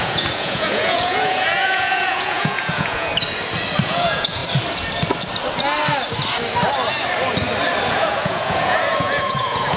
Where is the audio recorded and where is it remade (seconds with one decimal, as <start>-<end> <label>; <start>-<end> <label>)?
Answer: 0.0-3.1 remade; 3.1-3.8 recorded; 3.8-4.4 remade; 4.4-7.9 recorded; 7.9-9.8 remade